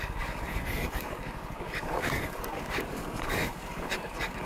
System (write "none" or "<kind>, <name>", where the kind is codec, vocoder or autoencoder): codec, DAC